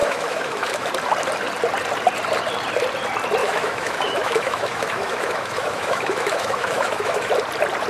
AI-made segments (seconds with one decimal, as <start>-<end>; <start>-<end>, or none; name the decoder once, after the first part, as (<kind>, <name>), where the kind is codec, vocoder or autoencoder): 0.0-0.9 (autoencoder, DAC-VAE); 3.4-7.3